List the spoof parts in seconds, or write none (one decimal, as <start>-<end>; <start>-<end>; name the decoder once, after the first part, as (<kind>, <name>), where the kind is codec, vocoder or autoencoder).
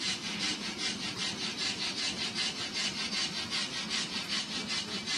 none